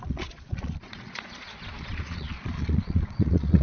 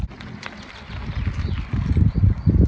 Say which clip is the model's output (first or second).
first